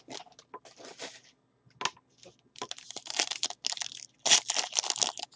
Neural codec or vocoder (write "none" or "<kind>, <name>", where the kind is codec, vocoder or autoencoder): none